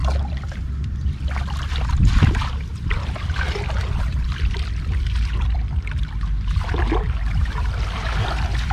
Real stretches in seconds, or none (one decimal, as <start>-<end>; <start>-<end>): none